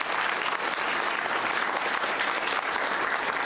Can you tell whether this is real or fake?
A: real